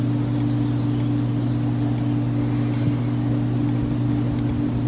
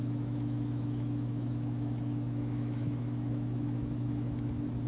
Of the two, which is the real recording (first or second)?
first